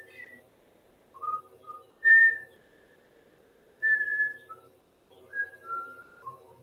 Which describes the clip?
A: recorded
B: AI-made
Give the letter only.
B